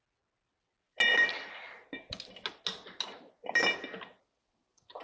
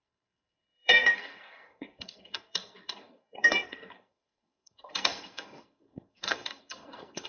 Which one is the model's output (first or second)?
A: second